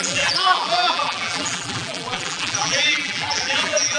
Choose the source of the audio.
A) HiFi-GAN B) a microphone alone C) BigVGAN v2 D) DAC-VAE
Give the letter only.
C